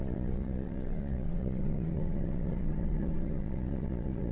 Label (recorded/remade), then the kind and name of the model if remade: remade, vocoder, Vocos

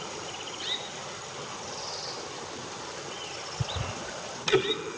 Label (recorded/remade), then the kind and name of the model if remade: recorded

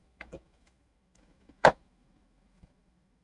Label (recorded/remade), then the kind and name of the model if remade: remade, autoencoder, DAC-VAE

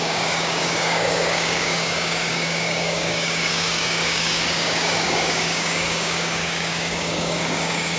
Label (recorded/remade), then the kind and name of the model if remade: remade, codec, DAC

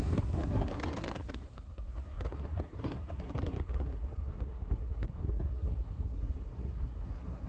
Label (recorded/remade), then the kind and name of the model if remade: remade, codec, SNAC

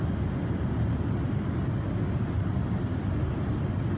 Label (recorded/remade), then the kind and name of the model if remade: recorded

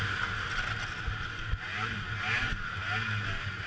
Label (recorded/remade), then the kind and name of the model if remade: recorded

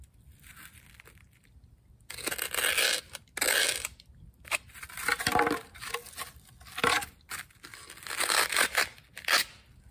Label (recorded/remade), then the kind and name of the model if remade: recorded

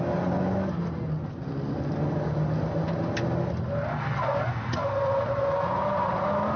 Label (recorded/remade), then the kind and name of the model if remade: recorded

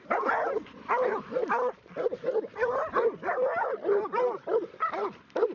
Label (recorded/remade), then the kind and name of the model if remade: recorded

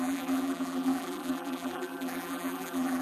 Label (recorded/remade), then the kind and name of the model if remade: remade, vocoder, BigVGAN v2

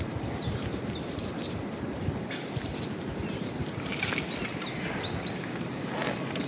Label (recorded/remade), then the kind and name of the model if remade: recorded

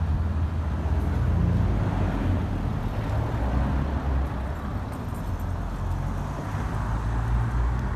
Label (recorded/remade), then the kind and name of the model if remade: recorded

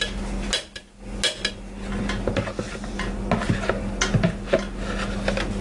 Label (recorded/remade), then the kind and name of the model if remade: recorded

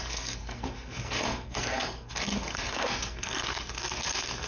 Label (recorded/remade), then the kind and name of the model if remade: remade, codec, SNAC